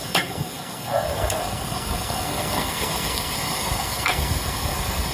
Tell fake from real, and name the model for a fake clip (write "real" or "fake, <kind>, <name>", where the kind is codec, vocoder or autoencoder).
fake, codec, SNAC